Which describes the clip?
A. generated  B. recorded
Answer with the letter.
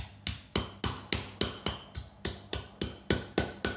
B